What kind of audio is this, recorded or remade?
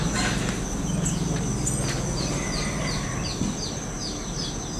recorded